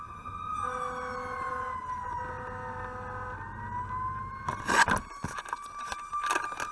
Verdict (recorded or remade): recorded